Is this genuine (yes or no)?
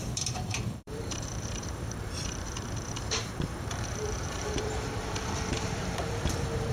no